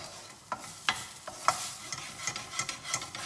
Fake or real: real